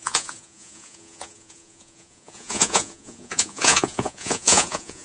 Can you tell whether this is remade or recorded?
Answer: remade